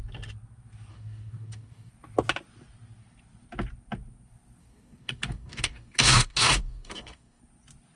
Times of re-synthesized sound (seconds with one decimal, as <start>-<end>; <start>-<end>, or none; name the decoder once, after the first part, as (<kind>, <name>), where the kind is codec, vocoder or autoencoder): 0.9-1.9 (codec, DAC); 4.6-7.4